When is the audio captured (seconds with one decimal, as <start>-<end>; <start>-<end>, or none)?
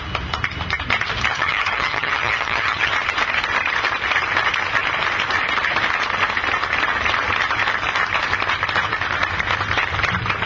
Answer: 0.0-1.3; 2.9-10.5